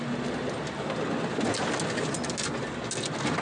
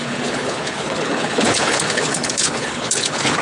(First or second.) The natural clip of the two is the first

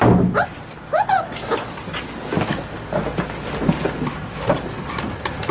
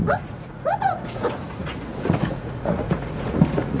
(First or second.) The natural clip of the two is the first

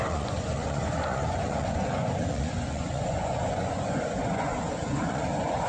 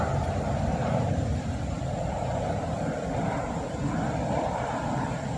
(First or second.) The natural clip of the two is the second